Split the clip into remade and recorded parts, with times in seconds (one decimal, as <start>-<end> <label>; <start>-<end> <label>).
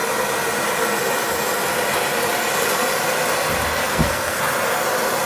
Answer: 0.0-3.9 recorded; 3.9-4.4 remade; 4.4-5.3 recorded